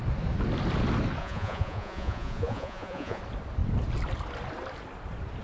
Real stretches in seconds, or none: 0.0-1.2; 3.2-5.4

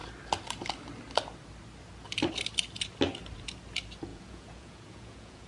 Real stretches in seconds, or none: 0.0-4.1

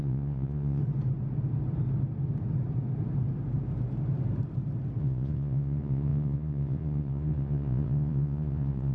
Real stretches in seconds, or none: 0.8-5.0